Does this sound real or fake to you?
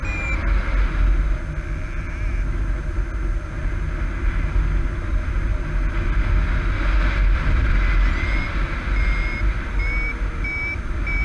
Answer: real